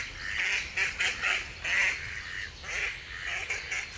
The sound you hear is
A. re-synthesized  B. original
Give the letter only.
B